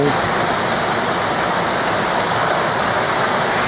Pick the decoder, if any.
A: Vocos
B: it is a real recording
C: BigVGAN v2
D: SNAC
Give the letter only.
B